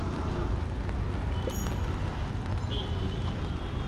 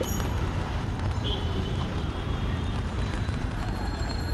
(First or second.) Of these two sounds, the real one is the first